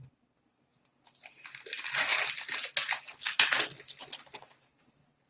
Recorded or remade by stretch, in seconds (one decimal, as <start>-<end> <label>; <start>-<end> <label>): 0.0-5.3 recorded